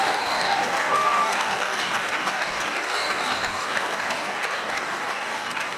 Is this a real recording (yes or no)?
no